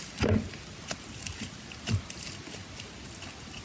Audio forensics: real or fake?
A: real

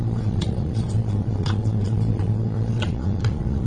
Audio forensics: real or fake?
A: fake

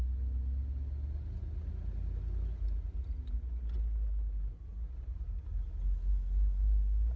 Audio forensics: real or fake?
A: real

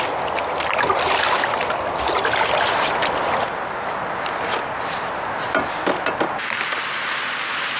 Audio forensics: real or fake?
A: real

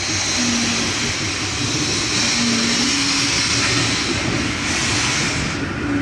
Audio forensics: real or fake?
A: real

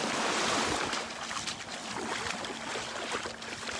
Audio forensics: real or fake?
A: real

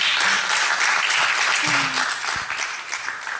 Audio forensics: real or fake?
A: real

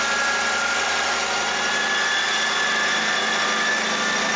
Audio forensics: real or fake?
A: real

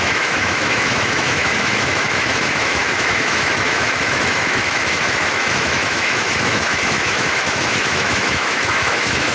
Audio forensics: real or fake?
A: fake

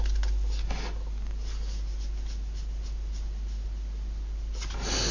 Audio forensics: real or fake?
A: real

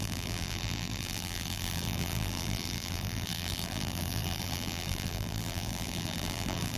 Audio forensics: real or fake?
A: fake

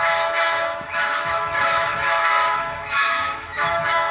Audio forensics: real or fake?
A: fake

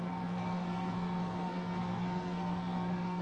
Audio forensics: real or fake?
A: fake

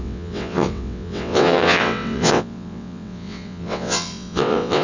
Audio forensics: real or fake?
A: fake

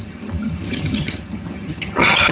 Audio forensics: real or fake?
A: fake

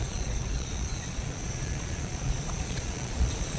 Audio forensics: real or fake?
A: fake